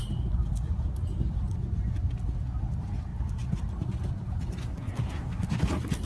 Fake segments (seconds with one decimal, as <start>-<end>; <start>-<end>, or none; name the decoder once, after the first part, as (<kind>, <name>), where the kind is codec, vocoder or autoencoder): 4.6-5.6 (codec, SNAC)